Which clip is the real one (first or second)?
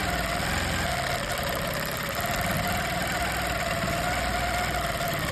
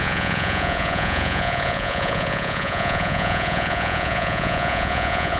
first